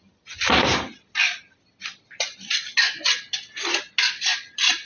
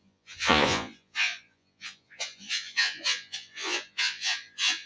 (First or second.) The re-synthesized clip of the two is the second